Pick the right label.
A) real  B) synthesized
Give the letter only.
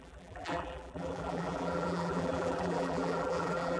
B